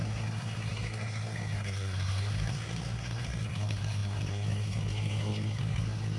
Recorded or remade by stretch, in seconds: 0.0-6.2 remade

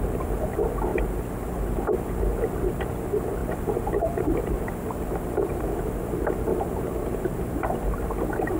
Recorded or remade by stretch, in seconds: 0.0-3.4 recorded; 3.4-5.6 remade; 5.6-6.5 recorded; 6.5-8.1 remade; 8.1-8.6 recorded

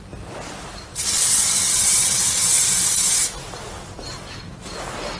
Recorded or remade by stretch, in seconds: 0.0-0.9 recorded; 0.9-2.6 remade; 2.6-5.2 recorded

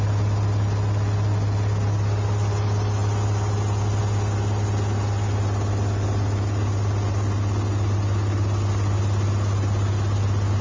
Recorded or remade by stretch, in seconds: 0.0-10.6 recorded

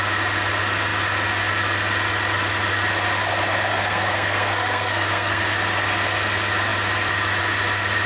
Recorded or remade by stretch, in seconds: 0.0-3.7 recorded; 3.7-5.4 remade; 5.4-8.1 recorded

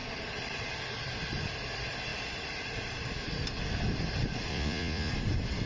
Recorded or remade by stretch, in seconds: 0.0-4.5 recorded; 4.5-5.1 remade; 5.1-5.7 recorded

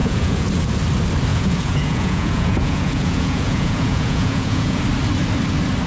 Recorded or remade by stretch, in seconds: 0.0-0.5 remade; 0.5-1.3 recorded; 1.3-4.8 remade; 4.8-5.9 recorded